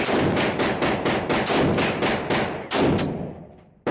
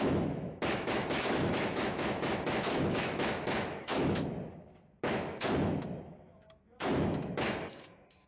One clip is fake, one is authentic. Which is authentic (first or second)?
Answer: first